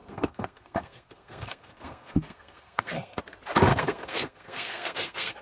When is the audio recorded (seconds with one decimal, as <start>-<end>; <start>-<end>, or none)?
3.2-3.7